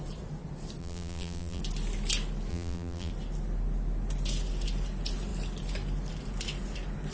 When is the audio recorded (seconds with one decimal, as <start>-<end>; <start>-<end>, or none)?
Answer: 0.0-0.8; 1.6-2.5; 3.1-7.1